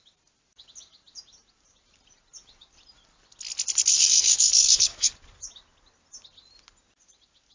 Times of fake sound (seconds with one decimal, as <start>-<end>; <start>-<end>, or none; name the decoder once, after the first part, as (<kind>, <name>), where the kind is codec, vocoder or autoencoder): 3.9-5.1 (codec, SNAC)

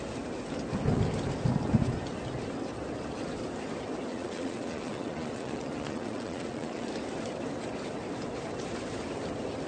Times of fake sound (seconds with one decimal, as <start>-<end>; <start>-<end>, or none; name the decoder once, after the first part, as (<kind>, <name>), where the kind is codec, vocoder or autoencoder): 4.1-6.9 (vocoder, Vocos)

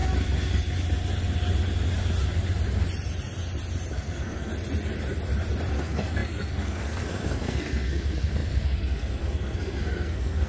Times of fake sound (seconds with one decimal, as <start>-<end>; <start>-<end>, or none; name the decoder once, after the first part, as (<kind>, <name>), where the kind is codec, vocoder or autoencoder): 3.9-4.5 (codec, SNAC); 5.7-10.5